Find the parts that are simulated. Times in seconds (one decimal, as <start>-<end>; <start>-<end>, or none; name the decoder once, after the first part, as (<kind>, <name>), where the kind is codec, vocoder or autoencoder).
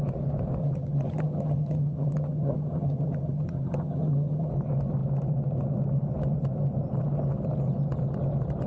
0.6-4.5 (vocoder, HiFi-GAN)